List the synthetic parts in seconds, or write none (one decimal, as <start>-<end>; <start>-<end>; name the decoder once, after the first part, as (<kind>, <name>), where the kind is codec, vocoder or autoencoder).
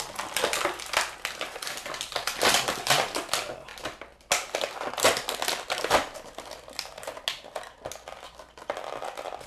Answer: none